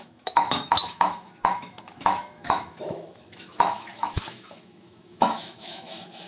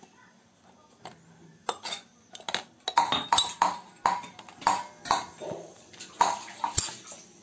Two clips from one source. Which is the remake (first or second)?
first